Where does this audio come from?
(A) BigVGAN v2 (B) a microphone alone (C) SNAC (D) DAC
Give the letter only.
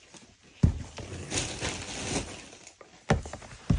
B